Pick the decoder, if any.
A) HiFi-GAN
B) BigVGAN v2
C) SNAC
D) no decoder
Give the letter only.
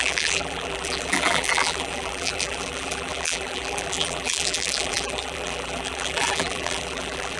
B